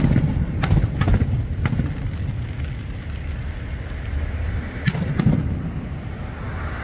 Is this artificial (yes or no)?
no